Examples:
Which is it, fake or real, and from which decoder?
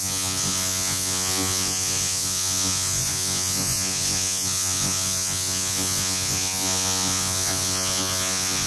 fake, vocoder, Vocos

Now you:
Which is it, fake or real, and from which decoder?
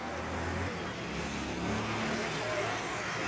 real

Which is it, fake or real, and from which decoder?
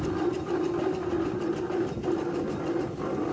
real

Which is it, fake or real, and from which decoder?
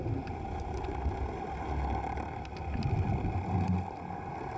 real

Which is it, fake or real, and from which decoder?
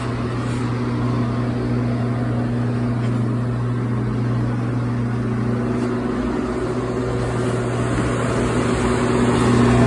real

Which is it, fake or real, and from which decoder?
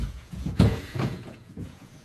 fake, vocoder, Vocos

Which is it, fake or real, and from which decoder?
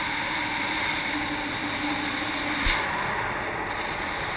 real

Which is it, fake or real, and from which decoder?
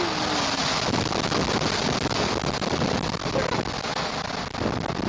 real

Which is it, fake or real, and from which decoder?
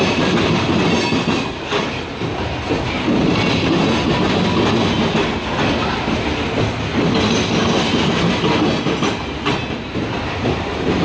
real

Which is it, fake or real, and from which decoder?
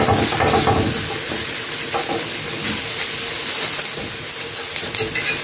real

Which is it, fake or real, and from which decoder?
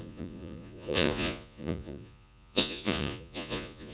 fake, vocoder, Vocos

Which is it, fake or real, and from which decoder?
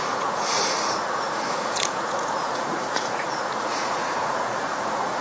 fake, vocoder, Vocos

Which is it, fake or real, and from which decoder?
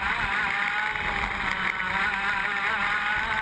real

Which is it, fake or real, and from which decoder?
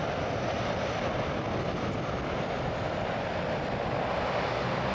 real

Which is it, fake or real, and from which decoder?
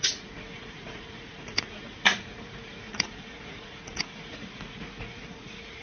fake, vocoder, Vocos